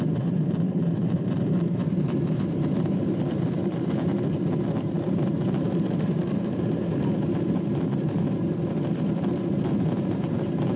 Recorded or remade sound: remade